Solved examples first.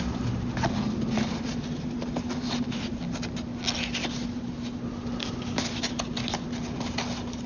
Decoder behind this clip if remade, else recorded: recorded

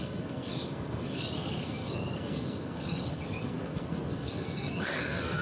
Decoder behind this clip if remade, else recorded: remade, codec, SNAC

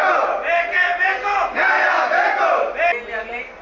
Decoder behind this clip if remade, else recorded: recorded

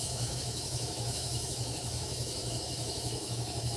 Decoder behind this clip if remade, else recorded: remade, autoencoder, DAC-VAE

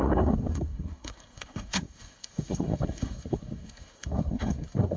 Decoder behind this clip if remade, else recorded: remade, codec, SNAC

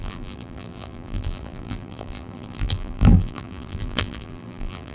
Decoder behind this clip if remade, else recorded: remade, vocoder, BigVGAN v2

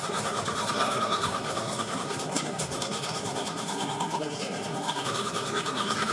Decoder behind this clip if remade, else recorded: remade, codec, SNAC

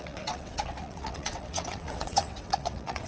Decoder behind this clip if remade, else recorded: remade, vocoder, WaveNeXt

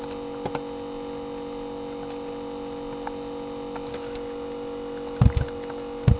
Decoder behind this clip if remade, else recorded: recorded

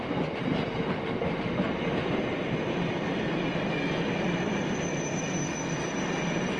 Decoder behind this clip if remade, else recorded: recorded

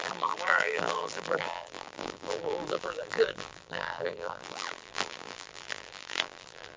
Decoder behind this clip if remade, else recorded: remade, vocoder, BigVGAN v2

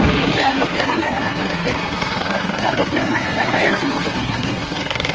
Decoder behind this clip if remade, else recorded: remade, codec, SNAC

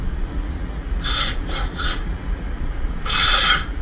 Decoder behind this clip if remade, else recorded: remade, vocoder, Vocos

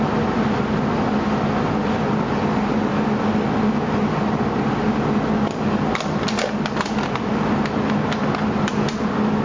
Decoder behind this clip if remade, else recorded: recorded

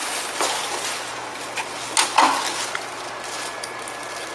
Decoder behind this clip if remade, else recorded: recorded